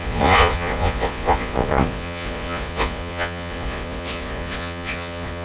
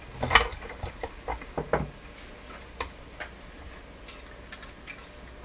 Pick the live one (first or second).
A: second